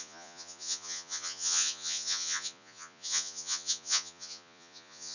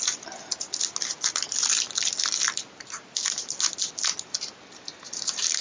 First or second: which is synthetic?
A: first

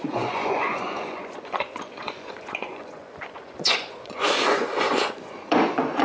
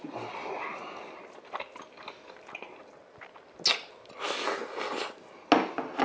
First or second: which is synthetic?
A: first